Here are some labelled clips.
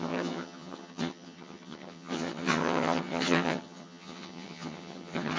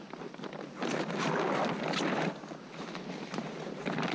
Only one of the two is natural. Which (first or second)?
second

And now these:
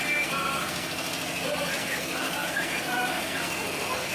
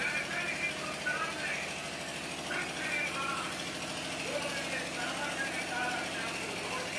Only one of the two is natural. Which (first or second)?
second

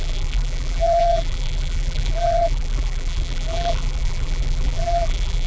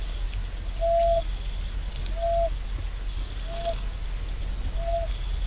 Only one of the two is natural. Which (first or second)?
second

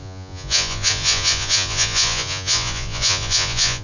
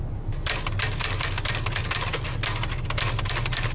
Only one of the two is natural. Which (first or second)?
second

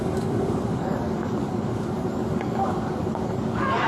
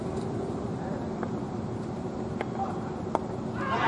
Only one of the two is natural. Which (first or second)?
second